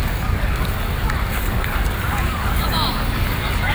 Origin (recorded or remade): remade